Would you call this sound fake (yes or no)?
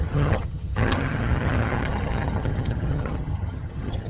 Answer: yes